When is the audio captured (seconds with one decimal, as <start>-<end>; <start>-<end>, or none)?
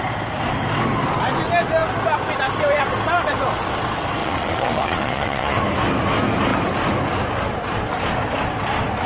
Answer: 0.0-4.2; 5.6-9.1